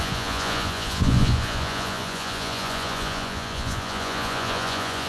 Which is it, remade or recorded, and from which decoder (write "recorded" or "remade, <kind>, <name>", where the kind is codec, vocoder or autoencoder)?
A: remade, vocoder, Vocos